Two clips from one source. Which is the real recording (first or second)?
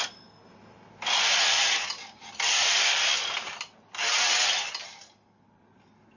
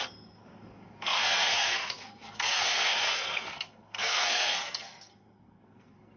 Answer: first